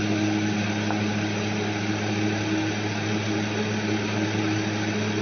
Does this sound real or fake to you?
real